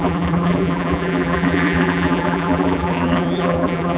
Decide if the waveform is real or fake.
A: fake